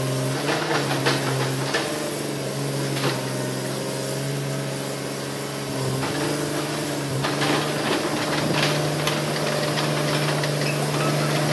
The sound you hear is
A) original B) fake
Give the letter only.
A